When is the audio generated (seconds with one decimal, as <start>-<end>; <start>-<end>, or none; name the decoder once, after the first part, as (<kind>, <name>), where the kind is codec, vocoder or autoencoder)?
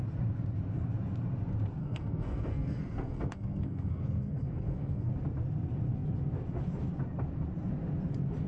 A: 1.8-5.1 (codec, SNAC)